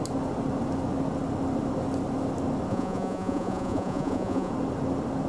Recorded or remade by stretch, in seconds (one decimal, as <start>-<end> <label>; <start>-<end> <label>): 0.0-2.7 recorded; 2.7-4.5 remade; 4.5-5.3 recorded